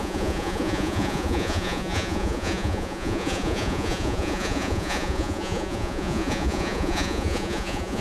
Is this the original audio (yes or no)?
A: no